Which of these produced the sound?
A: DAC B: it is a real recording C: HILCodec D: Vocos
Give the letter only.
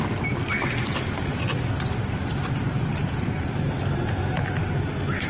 B